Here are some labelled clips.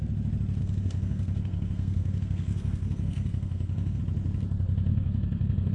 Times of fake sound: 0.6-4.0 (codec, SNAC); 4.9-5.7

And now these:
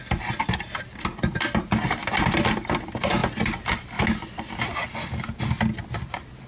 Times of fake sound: none